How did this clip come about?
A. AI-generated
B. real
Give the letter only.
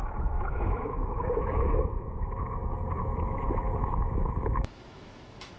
A